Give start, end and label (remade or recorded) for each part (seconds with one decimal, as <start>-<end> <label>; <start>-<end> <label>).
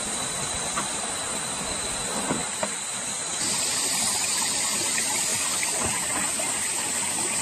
0.0-5.3 remade; 5.3-6.9 recorded; 6.9-7.4 remade